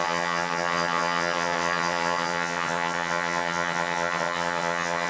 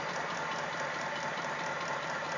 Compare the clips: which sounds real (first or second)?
second